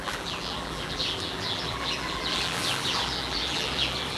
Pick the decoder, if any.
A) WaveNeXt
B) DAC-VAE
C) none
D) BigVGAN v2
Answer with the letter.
D